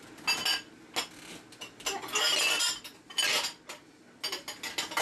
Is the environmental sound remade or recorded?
recorded